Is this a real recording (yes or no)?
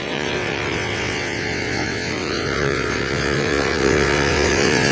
no